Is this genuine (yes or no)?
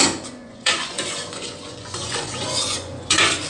no